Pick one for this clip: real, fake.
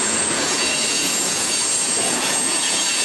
fake